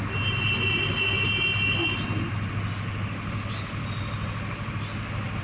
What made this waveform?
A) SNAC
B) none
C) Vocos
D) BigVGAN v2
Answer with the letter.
B